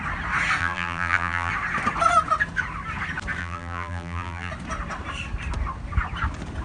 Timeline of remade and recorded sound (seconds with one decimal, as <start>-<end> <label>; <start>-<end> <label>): 0.0-0.6 recorded; 0.6-1.5 remade; 1.5-3.4 recorded; 3.4-4.5 remade; 4.5-6.6 recorded